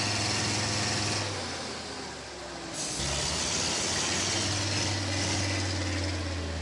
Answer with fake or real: real